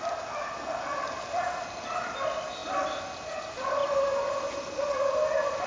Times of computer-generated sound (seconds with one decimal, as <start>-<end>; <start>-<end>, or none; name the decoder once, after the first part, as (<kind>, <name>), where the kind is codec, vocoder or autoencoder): none